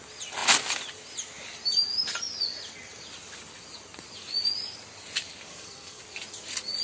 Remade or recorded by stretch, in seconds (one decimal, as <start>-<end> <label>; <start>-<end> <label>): 0.0-5.5 recorded; 5.5-6.0 remade; 6.0-6.8 recorded

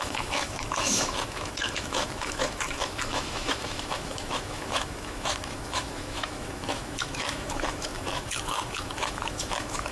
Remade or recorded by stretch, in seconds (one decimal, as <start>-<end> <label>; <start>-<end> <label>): 0.0-9.9 remade

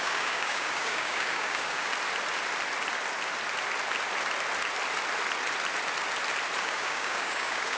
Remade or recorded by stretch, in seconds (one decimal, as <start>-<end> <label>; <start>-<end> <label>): 0.0-1.9 remade; 1.9-6.6 recorded; 6.6-7.8 remade

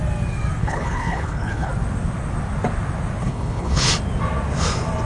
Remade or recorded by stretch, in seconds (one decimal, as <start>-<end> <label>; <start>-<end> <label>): 0.0-0.6 recorded; 0.6-1.7 remade; 1.7-3.2 recorded; 3.2-3.9 remade; 3.9-5.1 recorded

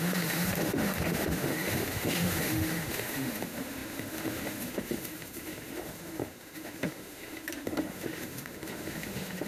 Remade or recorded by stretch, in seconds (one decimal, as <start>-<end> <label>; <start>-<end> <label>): 0.0-9.5 remade